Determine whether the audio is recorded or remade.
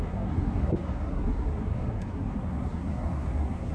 remade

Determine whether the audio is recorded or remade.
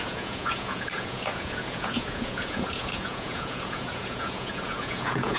remade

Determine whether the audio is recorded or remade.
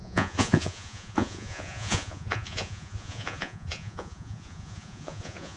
remade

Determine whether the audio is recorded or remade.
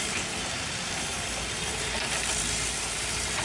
remade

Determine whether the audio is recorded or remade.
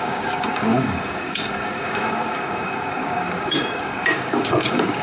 remade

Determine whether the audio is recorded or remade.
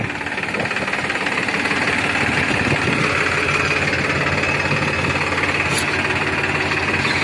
recorded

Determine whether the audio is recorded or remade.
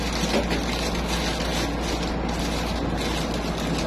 recorded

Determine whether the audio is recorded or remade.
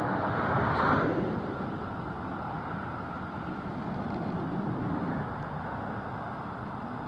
recorded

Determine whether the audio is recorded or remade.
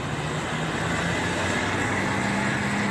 recorded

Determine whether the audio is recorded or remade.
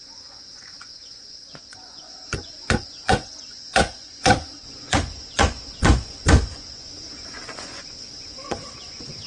remade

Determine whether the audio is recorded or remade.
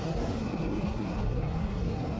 remade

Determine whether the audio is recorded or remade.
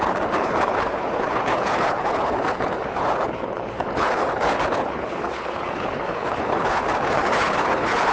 remade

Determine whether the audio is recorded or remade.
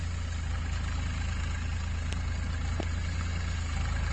recorded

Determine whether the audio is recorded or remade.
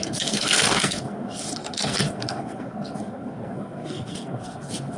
remade